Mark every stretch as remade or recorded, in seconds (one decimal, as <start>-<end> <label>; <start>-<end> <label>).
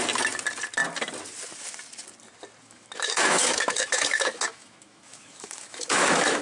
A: 0.0-2.6 recorded; 2.6-6.4 remade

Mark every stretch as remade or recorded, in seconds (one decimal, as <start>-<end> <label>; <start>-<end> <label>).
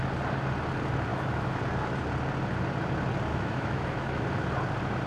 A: 0.0-1.1 recorded; 1.1-1.6 remade; 1.6-3.3 recorded; 3.3-4.2 remade; 4.2-5.1 recorded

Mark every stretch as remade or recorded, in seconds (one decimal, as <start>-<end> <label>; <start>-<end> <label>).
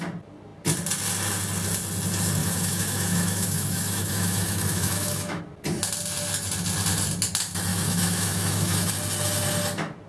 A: 0.0-2.4 recorded; 2.4-5.4 remade; 5.4-7.7 recorded; 7.7-8.9 remade; 8.9-10.1 recorded